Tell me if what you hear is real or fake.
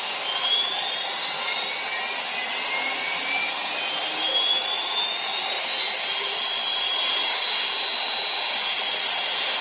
real